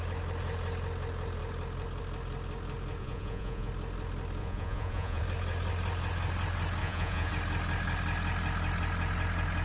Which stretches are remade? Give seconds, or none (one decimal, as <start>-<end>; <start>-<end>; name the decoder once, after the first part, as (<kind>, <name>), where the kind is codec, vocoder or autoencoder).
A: 3.0-3.7 (vocoder, Vocos); 4.4-5.2; 6.8-7.3